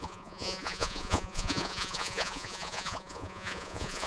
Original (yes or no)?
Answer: no